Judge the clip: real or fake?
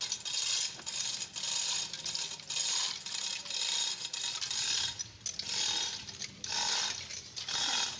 real